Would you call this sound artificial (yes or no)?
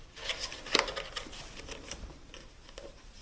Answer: no